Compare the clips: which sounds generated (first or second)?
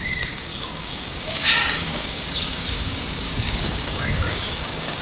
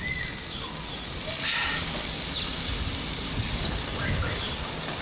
first